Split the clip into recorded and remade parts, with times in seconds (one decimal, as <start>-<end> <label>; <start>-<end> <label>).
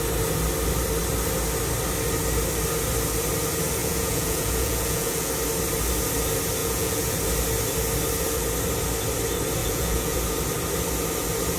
0.0-3.8 recorded; 3.8-5.3 remade; 5.3-6.6 recorded; 6.6-7.2 remade; 7.2-9.6 recorded; 9.6-10.2 remade; 10.2-11.6 recorded